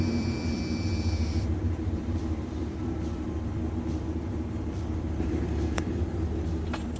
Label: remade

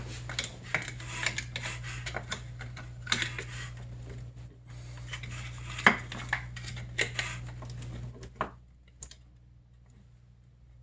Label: recorded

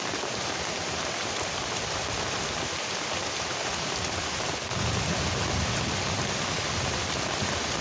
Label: recorded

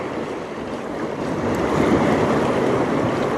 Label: recorded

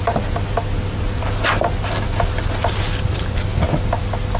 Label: recorded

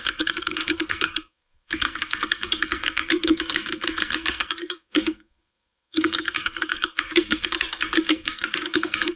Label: remade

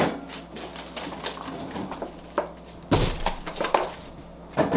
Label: recorded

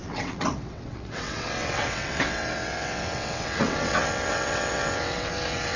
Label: remade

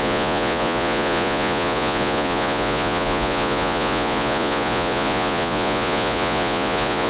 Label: remade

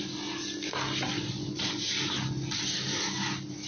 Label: recorded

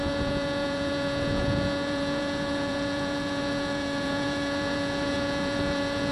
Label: remade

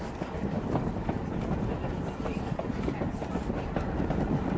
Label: recorded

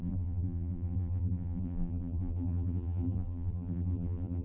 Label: remade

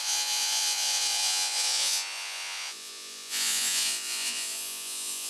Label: remade